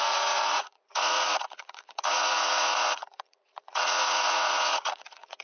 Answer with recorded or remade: remade